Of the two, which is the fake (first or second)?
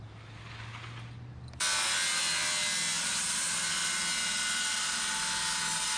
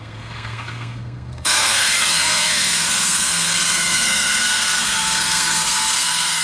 second